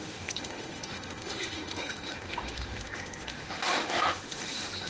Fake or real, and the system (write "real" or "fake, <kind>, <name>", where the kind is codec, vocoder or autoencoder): fake, autoencoder, DAC-VAE